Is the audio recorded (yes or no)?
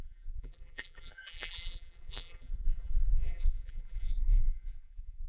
no